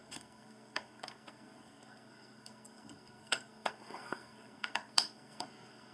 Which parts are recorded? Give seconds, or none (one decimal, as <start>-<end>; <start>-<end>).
none